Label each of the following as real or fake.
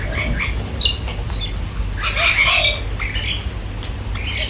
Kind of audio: real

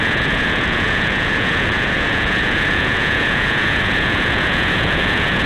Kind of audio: fake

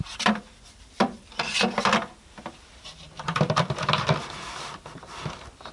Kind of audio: fake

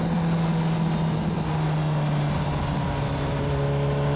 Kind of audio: real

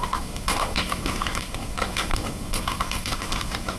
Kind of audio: fake